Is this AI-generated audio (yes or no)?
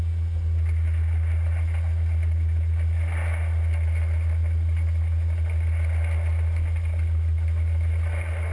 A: no